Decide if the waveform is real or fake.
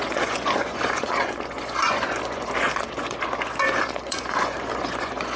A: fake